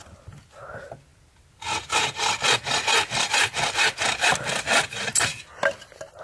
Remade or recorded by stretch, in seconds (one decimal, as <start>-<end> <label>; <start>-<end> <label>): 0.0-6.2 recorded